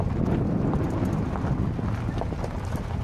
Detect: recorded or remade recorded